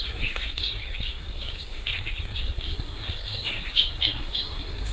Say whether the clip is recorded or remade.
remade